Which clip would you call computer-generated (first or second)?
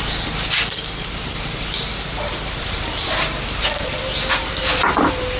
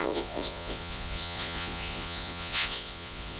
second